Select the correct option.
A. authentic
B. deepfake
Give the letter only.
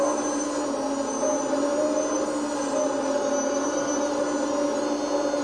A